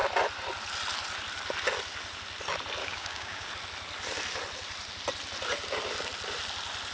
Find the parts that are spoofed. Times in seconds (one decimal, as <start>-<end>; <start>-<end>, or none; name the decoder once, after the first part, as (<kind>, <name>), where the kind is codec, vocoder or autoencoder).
2.8-3.5 (codec, DAC)